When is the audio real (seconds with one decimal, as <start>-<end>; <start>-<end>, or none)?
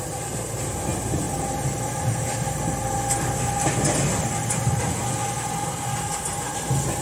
0.0-7.0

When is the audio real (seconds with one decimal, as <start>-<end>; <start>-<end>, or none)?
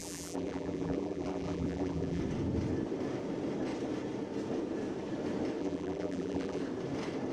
2.2-5.6; 6.6-7.3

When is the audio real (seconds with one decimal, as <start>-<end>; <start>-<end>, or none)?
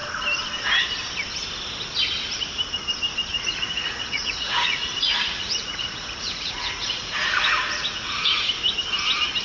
0.0-3.3; 8.5-9.4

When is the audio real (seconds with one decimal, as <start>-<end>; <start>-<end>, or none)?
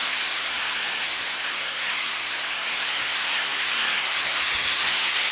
none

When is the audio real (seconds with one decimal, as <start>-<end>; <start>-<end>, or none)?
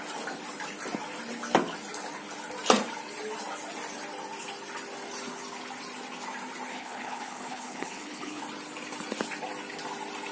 0.0-6.7; 8.4-10.3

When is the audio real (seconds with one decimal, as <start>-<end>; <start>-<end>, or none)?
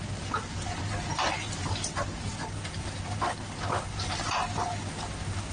0.0-5.5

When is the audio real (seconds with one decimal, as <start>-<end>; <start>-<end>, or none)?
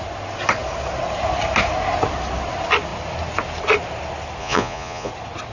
0.0-4.4; 5.1-5.5